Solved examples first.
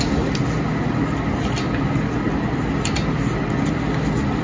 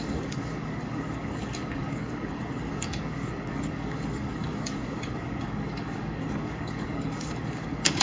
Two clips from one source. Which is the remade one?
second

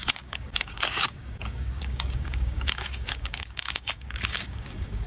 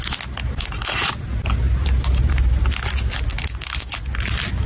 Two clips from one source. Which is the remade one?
first